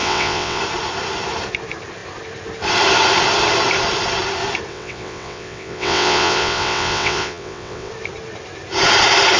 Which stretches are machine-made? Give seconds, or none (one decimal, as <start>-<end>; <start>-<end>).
0.0-0.6; 4.7-7.9